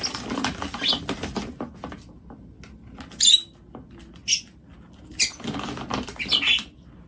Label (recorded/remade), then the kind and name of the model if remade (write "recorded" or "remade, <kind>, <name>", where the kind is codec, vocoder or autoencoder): recorded